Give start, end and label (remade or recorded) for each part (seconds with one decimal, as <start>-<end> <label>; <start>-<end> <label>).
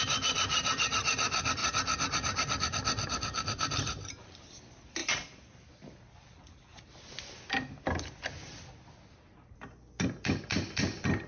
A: 0.0-1.6 recorded; 1.6-4.6 remade; 4.6-5.0 recorded; 5.0-5.5 remade; 5.5-11.3 recorded